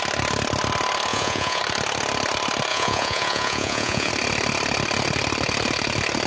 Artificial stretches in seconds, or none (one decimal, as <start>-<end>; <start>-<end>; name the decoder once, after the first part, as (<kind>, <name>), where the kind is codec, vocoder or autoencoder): 1.1-1.6 (vocoder, Vocos); 2.7-4.1